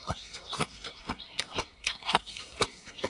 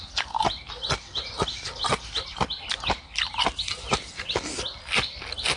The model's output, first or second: first